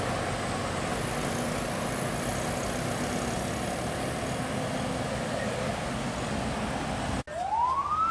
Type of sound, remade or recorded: recorded